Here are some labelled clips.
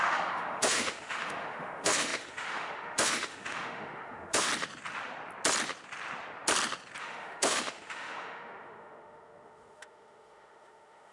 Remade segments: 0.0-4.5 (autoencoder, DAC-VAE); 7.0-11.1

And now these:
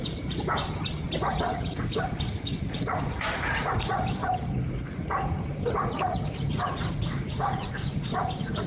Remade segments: 0.0-0.6 (vocoder, Vocos); 1.2-8.7

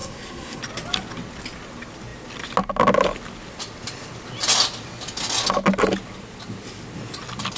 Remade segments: 0.0-0.6 (codec, SNAC)

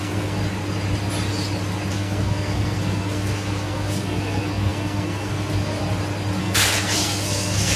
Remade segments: 0.0-0.4 (codec, SNAC); 1.9-5.8; 6.4-7.8

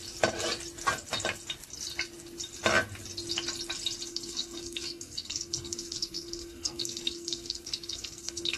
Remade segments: 4.1-8.6 (codec, SNAC)

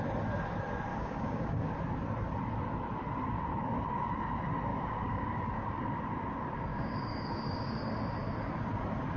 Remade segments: 0.9-1.7 (codec, DAC); 4.7-5.8; 6.7-7.9

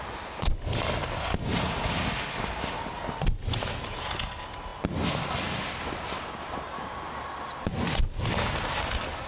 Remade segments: none

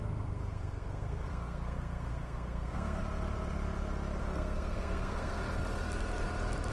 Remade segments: 0.0-3.0 (codec, SNAC); 4.2-5.4